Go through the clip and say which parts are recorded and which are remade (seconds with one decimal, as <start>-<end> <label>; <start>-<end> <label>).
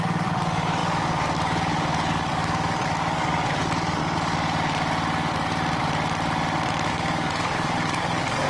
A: 0.0-4.0 remade; 4.0-6.9 recorded; 6.9-8.5 remade